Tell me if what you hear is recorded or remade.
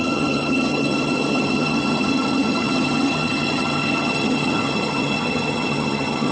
remade